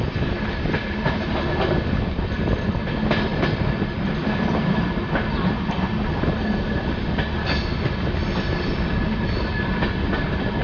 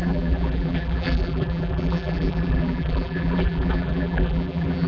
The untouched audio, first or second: first